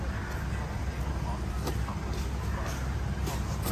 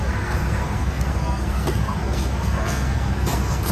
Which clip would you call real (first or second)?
first